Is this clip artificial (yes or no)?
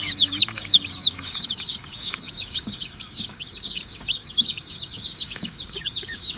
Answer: yes